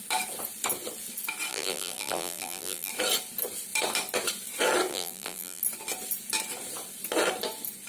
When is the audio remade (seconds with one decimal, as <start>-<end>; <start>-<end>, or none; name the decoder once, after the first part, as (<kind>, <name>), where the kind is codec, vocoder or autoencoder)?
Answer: 1.5-2.9 (vocoder, BigVGAN v2); 4.9-5.6